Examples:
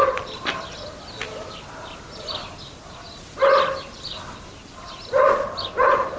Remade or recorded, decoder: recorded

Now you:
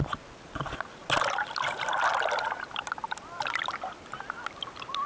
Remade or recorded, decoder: recorded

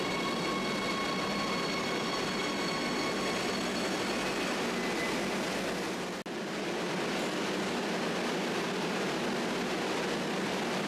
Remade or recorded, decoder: recorded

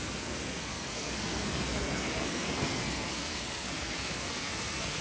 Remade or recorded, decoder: remade, codec, SNAC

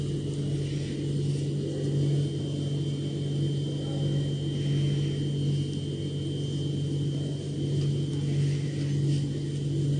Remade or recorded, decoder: recorded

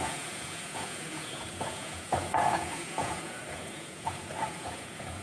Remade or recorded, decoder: remade, vocoder, Vocos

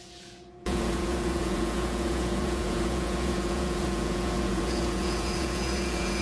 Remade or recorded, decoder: remade, vocoder, Vocos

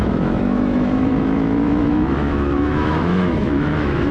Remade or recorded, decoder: remade, autoencoder, DAC-VAE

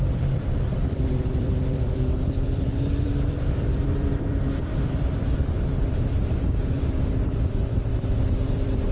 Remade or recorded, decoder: remade, vocoder, BigVGAN v2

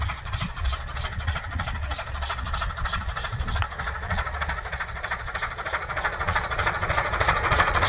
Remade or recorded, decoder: remade, vocoder, Vocos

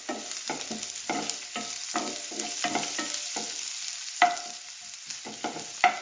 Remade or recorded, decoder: recorded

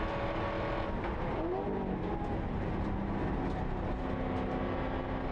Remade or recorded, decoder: recorded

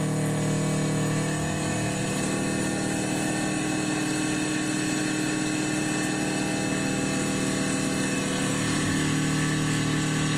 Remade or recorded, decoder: recorded